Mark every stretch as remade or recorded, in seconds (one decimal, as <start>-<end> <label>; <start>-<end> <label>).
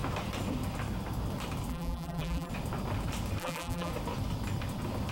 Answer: 0.0-1.7 recorded; 1.7-2.5 remade; 2.5-3.4 recorded; 3.4-3.9 remade; 3.9-5.1 recorded